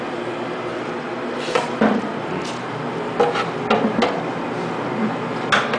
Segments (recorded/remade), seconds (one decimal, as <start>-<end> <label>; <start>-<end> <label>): 0.0-5.8 recorded